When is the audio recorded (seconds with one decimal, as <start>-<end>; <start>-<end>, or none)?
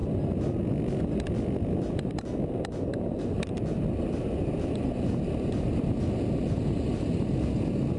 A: 0.0-8.0